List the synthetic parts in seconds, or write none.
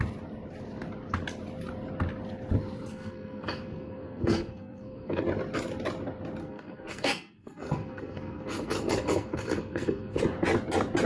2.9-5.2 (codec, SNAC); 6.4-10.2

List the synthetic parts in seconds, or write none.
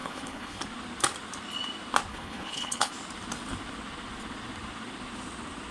0.0-0.6 (codec, HILCodec); 2.1-2.9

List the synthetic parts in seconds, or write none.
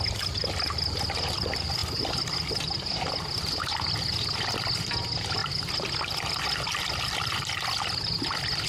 1.8-2.5 (vocoder, BigVGAN v2); 5.4-6.4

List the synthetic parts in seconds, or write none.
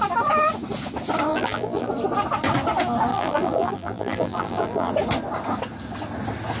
1.3-1.9 (vocoder, BigVGAN v2); 3.1-4.9